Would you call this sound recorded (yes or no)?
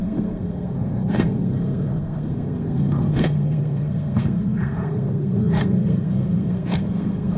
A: no